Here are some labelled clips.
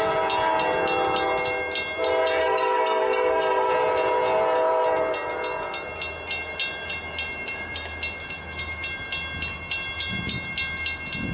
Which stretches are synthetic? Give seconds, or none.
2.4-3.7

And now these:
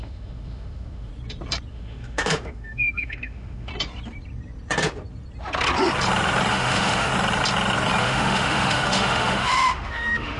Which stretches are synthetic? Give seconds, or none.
0.0-1.1; 1.7-3.7; 6.5-7.1; 8.0-10.4

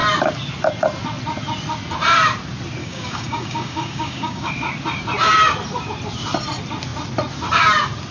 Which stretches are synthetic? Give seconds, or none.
2.8-4.5

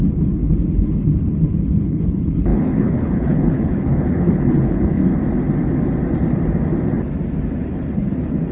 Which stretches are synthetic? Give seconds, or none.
0.0-5.0; 7.6-8.5

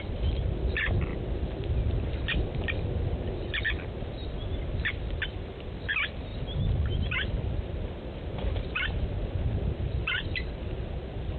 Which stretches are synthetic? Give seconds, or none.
none

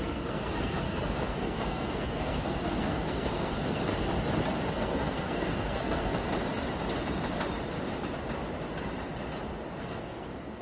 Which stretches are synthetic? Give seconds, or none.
0.0-3.9; 4.7-6.2; 9.8-10.6

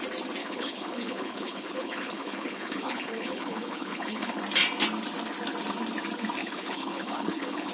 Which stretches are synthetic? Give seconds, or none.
0.4-4.4; 6.4-7.7

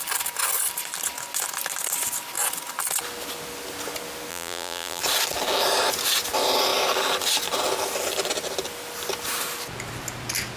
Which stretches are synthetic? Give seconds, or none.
4.3-5.0